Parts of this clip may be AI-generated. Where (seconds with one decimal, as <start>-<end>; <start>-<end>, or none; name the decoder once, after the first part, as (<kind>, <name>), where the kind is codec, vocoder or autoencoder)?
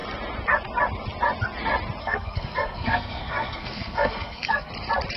2.0-4.7 (codec, SNAC)